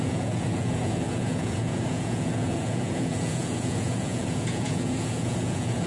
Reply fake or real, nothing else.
fake